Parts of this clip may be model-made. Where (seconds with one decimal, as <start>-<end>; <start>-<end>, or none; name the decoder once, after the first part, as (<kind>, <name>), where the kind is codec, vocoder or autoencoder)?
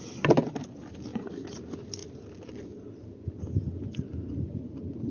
1.1-1.6 (vocoder, Vocos)